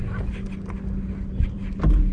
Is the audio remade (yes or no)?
no